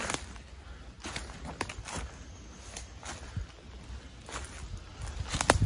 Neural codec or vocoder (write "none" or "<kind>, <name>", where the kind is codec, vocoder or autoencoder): none